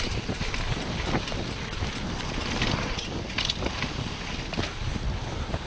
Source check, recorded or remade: recorded